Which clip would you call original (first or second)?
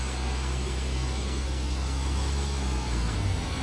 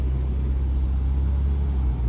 second